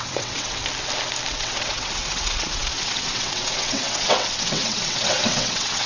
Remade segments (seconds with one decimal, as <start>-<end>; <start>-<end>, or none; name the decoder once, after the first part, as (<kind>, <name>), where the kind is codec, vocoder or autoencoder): 0.0-0.6 (vocoder, WaveNeXt); 1.3-5.9